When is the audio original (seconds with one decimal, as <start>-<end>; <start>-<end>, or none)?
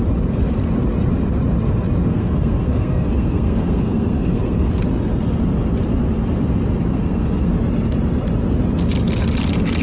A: 0.0-2.1; 4.7-6.9; 7.5-9.8